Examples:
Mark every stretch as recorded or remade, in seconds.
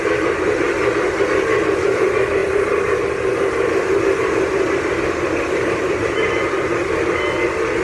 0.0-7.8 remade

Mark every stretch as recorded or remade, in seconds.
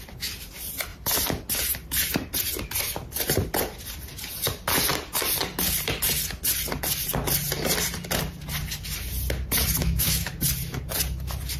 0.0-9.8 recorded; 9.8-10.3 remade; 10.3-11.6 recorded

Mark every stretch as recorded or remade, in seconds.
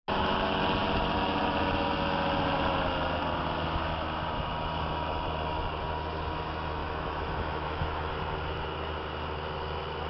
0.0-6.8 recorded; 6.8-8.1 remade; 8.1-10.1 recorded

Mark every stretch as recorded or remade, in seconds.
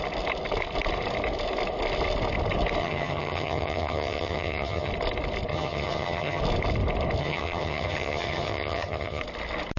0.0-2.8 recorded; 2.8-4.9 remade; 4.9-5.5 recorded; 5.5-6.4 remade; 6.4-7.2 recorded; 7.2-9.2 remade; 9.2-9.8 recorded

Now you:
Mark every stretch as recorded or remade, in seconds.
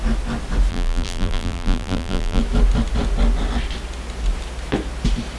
0.0-0.7 recorded; 0.7-2.4 remade; 2.4-5.4 recorded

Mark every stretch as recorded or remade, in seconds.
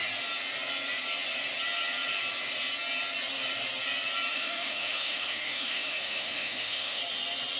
0.0-4.3 recorded; 4.3-7.0 remade; 7.0-7.6 recorded